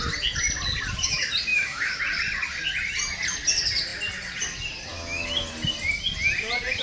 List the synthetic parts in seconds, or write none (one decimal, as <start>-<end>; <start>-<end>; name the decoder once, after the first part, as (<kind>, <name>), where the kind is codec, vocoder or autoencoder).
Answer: 1.5-2.0 (autoencoder, DAC-VAE); 4.9-5.4